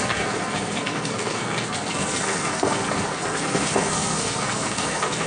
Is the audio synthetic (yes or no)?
yes